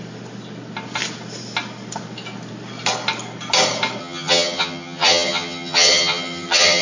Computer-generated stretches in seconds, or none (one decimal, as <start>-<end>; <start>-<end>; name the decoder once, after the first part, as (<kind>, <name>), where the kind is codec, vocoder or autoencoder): 4.0-6.8 (vocoder, HiFi-GAN)

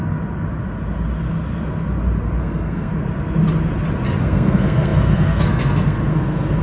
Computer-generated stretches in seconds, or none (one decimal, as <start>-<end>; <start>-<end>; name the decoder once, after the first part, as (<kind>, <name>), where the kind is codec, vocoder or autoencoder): 2.4-2.9 (codec, SNAC); 4.2-6.6